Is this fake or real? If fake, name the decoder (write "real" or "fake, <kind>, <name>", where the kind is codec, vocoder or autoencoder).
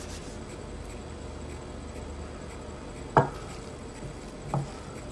real